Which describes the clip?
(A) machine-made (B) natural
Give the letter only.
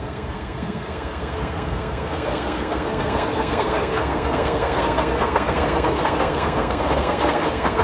A